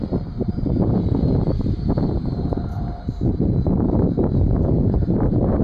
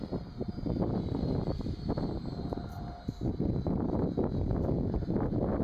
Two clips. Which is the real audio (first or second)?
second